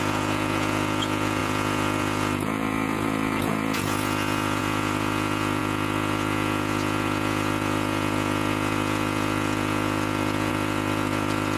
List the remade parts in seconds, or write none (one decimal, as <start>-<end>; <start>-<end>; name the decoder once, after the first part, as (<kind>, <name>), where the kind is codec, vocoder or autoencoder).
0.0-11.6 (vocoder, Vocos)